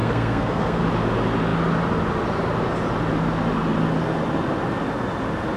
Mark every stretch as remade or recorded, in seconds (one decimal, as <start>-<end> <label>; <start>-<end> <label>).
0.0-0.8 remade; 0.8-5.6 recorded